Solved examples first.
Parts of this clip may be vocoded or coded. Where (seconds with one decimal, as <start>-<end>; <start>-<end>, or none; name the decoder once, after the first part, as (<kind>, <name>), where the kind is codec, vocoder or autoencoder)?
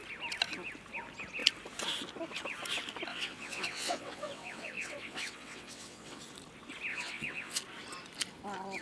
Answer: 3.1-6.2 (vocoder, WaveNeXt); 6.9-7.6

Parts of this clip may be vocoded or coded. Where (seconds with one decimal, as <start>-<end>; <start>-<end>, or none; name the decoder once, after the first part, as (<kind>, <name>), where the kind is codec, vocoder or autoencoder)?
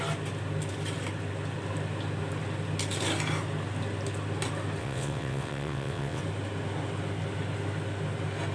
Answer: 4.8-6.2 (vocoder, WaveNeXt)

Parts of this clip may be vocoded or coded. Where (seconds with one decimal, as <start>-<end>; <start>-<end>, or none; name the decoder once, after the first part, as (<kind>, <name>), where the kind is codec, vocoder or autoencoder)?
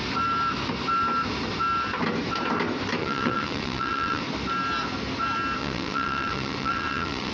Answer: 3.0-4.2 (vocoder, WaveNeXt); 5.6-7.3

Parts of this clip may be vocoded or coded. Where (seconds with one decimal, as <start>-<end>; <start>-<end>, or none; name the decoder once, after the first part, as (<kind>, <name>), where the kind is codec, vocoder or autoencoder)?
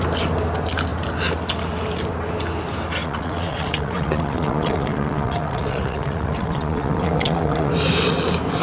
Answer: 3.0-7.7 (vocoder, WaveNeXt)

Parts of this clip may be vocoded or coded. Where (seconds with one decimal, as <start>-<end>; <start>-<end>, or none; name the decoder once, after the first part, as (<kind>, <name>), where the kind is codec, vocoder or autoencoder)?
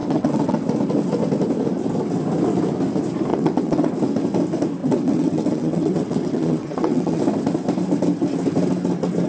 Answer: 0.0-0.6 (vocoder, WaveNeXt); 3.3-3.9; 4.8-7.2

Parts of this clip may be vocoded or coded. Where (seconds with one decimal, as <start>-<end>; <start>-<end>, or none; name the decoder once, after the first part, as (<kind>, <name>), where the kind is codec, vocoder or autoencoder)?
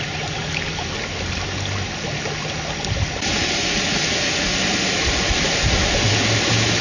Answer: none